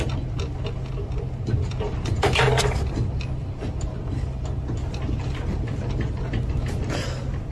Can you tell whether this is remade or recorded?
recorded